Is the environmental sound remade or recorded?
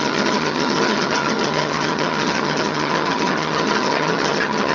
remade